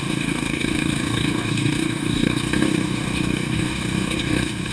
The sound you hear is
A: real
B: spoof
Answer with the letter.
B